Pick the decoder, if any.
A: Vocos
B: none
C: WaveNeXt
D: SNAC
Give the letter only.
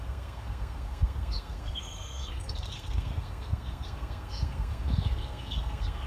D